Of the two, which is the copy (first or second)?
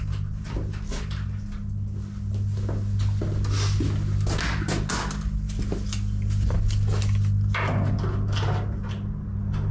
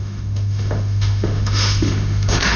second